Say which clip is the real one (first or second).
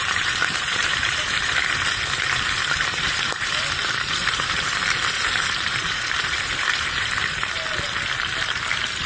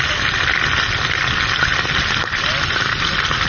second